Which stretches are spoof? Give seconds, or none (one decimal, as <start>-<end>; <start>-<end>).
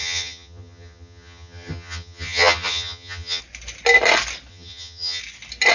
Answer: 0.0-3.4; 4.5-5.2